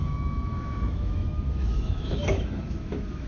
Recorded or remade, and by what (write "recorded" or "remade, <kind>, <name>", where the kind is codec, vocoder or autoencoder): remade, autoencoder, DAC-VAE